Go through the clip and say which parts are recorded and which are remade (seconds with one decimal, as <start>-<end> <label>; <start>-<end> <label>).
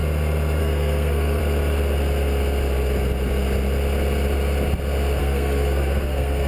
0.0-0.6 recorded; 0.6-1.4 remade; 1.4-5.2 recorded; 5.2-6.5 remade